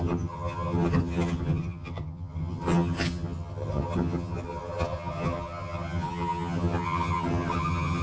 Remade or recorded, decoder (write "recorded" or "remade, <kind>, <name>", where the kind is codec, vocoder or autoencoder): remade, vocoder, HiFi-GAN